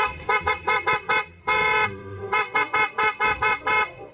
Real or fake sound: fake